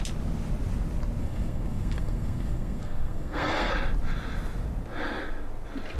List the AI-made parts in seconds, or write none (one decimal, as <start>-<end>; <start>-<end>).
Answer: 1.2-3.7